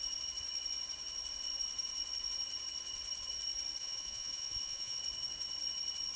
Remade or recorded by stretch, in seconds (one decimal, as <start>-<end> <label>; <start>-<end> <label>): 0.0-3.8 recorded; 3.8-5.0 remade; 5.0-6.2 recorded